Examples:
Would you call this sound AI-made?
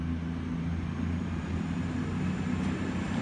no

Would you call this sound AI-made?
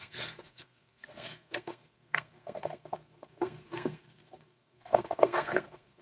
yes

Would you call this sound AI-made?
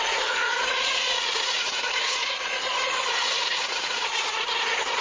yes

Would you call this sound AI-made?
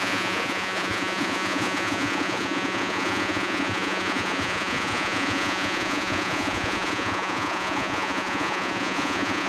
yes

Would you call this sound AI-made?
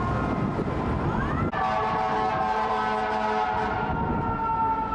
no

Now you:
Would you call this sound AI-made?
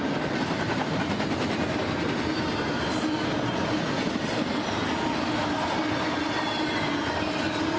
no